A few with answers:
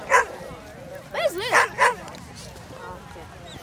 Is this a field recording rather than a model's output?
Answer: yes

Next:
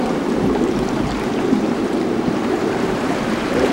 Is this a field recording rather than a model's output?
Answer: no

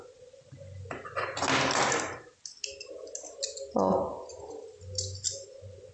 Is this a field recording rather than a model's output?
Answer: yes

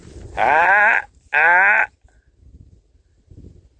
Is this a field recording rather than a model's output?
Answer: yes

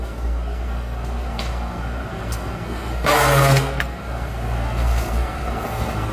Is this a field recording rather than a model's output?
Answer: no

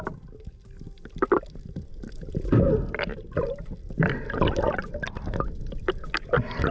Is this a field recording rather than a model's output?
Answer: yes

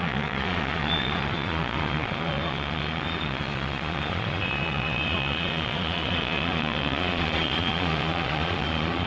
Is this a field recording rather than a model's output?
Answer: no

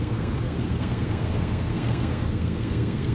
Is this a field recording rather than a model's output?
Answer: no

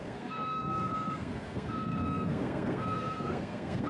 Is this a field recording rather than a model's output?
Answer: no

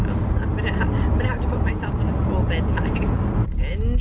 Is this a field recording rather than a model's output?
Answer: yes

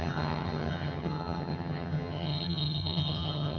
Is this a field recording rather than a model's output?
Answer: no